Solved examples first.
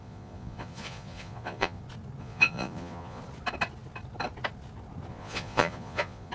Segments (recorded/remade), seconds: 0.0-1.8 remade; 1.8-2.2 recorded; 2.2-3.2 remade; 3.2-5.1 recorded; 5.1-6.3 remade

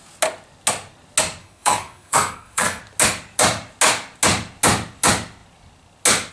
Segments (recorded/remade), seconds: 0.0-1.4 recorded; 1.4-2.8 remade; 2.8-6.3 recorded

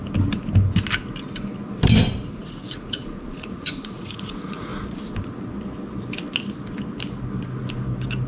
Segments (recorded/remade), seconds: 0.0-2.4 recorded; 2.4-4.7 remade; 4.7-8.3 recorded

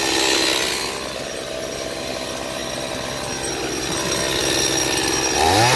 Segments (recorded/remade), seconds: 0.0-5.8 recorded

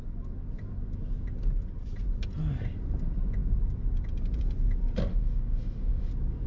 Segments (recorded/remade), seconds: 0.0-5.1 recorded; 5.1-6.1 remade; 6.1-6.5 recorded

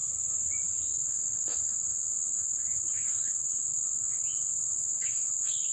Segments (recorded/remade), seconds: 0.0-0.9 recorded; 0.9-5.7 remade

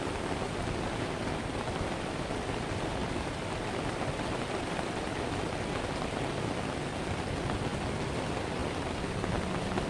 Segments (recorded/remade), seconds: 0.0-9.9 recorded

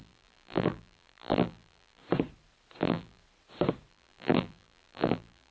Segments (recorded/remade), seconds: 0.0-2.0 remade; 2.0-2.8 recorded; 2.8-3.2 remade; 3.2-3.9 recorded; 3.9-5.5 remade